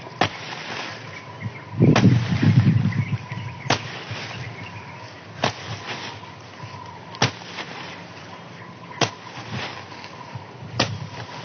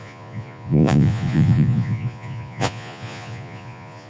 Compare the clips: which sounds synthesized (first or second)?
second